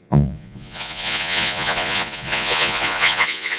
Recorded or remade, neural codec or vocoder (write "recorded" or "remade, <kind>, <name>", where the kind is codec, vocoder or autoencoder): remade, vocoder, Vocos